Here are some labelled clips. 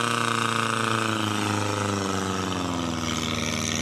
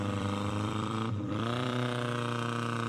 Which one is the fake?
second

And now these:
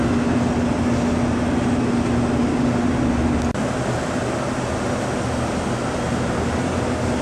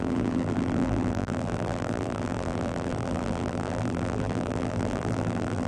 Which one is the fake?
second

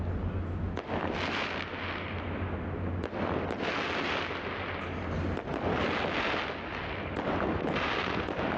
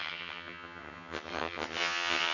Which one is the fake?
second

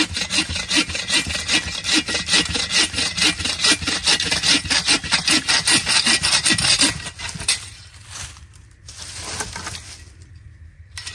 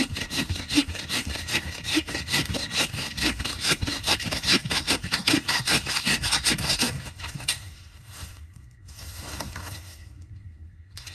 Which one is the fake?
second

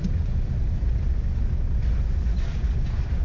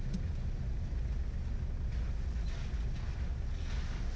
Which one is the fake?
first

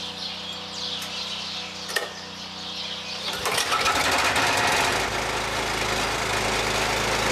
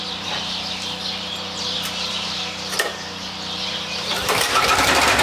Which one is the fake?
second